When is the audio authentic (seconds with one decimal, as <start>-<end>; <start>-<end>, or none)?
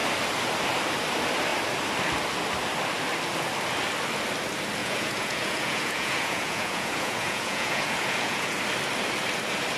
0.0-4.8; 8.6-9.8